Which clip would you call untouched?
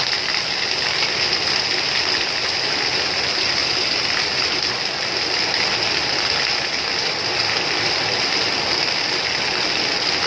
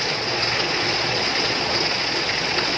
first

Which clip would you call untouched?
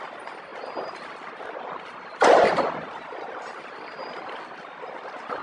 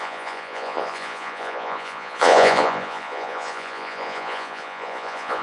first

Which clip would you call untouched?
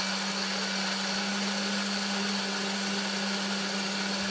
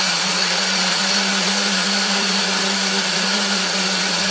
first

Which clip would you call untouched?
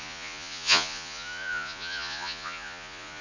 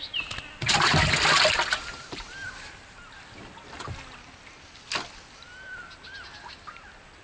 second